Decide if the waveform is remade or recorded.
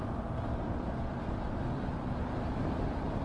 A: remade